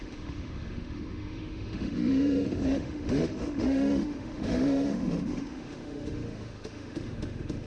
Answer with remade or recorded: remade